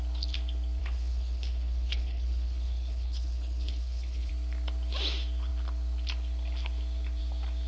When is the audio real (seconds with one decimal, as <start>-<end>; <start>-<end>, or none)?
0.0-0.8; 4.3-7.7